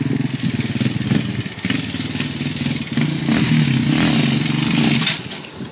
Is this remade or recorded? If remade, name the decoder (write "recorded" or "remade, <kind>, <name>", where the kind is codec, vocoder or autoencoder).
recorded